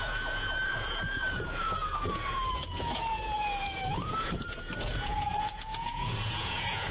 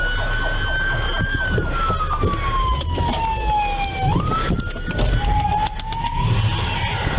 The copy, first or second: first